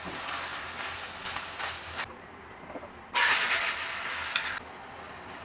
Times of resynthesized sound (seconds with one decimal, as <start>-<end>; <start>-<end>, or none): 0.5-3.5